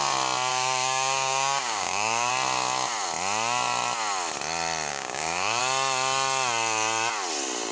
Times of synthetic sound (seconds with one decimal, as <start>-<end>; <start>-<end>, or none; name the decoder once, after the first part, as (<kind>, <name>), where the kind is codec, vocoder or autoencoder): 0.5-2.3 (codec, DAC); 4.9-5.6